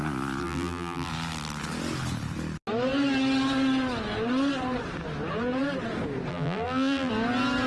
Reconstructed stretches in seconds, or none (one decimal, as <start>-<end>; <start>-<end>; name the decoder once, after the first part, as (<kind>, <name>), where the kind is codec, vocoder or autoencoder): 0.4-1.1 (vocoder, BigVGAN v2); 6.3-7.1